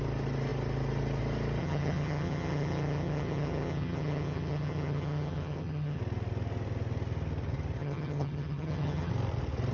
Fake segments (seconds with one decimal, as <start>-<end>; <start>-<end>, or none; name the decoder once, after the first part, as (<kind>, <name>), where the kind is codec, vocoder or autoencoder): 1.6-6.0 (vocoder, HiFi-GAN); 7.8-9.1